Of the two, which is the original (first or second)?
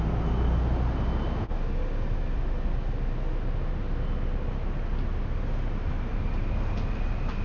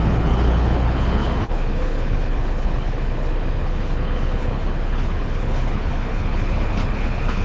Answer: first